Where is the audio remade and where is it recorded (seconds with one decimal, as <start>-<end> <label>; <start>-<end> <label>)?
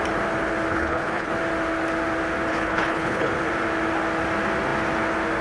0.0-0.7 recorded; 0.7-1.3 remade; 1.3-2.5 recorded; 2.5-3.3 remade; 3.3-5.4 recorded